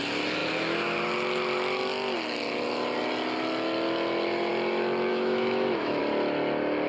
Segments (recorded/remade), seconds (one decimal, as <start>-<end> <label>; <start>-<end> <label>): 0.0-5.1 recorded; 5.1-6.0 remade; 6.0-6.9 recorded